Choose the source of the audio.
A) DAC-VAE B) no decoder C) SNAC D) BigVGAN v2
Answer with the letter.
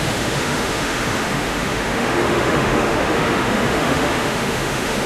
A